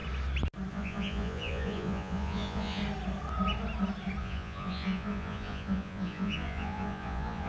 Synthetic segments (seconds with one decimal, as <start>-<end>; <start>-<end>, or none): 0.7-2.8; 4.2-7.5